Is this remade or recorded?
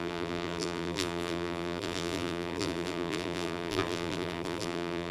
remade